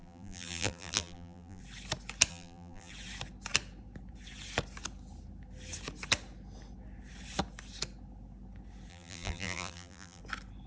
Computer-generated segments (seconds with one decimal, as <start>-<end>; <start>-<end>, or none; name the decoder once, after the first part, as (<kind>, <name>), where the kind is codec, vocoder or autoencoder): 0.0-1.6 (vocoder, BigVGAN v2); 2.3-2.9; 8.9-10.2